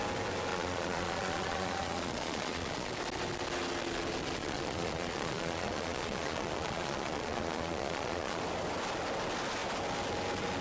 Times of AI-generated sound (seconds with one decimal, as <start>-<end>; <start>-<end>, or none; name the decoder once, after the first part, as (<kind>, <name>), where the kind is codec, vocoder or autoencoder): 0.5-2.9 (vocoder, Vocos); 4.4-8.4